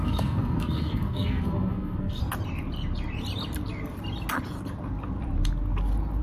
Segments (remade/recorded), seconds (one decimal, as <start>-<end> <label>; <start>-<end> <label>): 0.0-2.2 remade; 2.2-6.2 recorded